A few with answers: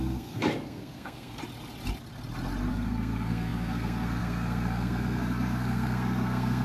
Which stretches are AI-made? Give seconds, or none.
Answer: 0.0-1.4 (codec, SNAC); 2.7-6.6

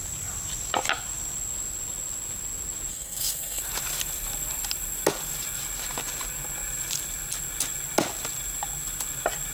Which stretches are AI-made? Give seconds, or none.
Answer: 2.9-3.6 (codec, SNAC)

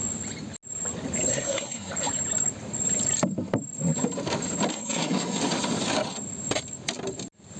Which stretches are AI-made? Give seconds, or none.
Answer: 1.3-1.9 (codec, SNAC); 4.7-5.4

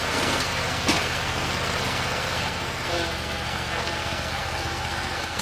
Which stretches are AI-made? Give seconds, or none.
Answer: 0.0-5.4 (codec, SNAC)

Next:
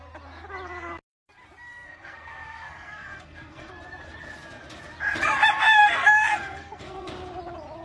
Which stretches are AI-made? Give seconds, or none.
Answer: 1.7-3.7 (codec, SNAC); 5.6-7.1

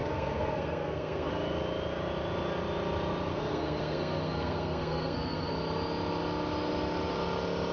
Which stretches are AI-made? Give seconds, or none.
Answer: 0.0-1.3 (codec, SNAC); 3.3-5.5

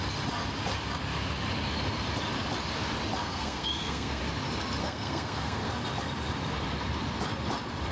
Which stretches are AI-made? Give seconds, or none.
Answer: 3.2-4.2 (codec, SNAC); 4.8-5.7